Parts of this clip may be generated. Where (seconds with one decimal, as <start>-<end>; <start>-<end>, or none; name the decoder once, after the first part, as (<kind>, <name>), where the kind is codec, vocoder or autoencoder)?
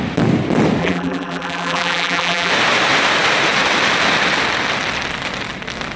0.8-2.5 (vocoder, BigVGAN v2)